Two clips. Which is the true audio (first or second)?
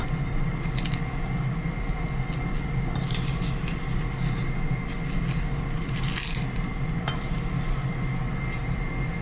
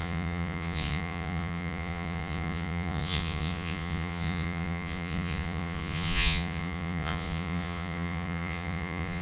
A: first